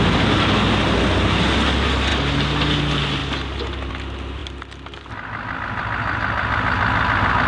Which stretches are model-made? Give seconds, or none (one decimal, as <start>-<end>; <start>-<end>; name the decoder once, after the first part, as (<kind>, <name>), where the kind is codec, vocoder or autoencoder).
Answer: none